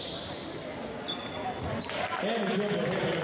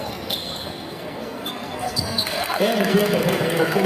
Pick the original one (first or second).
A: first